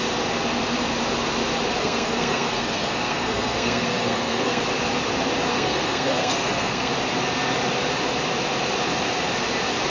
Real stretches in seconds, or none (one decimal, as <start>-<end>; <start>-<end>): 0.0-1.8; 4.6-5.5; 6.9-9.9